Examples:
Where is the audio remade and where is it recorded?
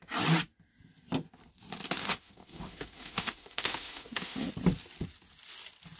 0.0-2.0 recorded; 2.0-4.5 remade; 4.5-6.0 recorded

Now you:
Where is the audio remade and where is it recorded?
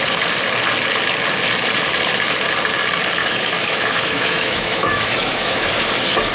0.0-3.2 recorded; 3.2-5.7 remade; 5.7-6.3 recorded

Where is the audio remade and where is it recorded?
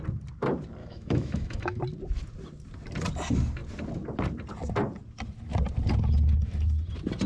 0.0-0.8 recorded; 0.8-1.8 remade; 1.8-7.3 recorded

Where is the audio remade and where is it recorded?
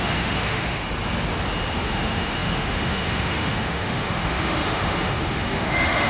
0.0-0.8 remade; 0.8-1.7 recorded; 1.7-6.1 remade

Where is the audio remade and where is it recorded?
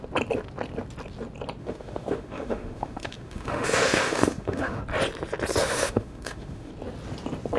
0.0-1.6 recorded; 1.6-4.8 remade; 4.8-5.6 recorded; 5.6-6.7 remade; 6.7-7.6 recorded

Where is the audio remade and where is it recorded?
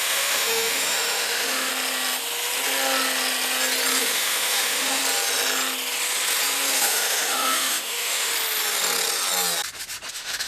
0.0-1.7 remade; 1.7-4.0 recorded; 4.0-5.0 remade; 5.0-6.7 recorded; 6.7-8.3 remade; 8.3-10.1 recorded; 10.1-10.5 remade